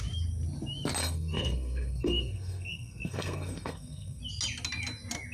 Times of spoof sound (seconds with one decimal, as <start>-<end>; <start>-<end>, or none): 1.0-4.2